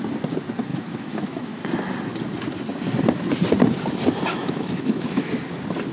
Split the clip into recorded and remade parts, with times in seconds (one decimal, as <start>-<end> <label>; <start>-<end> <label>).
0.0-0.7 recorded; 0.7-1.6 remade; 1.6-4.3 recorded; 4.3-5.3 remade; 5.3-5.9 recorded